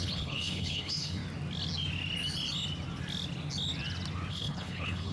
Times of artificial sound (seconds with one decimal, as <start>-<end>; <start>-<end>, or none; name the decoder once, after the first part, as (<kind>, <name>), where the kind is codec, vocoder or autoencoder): 0.0-1.2 (codec, HILCodec); 4.3-5.1